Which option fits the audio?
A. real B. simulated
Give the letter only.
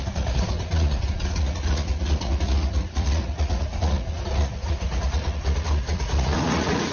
B